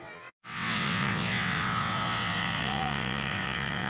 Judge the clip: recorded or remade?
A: remade